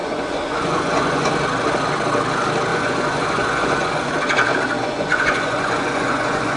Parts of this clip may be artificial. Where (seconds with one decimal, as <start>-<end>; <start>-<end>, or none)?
0.0-1.3; 2.7-4.1; 4.8-6.6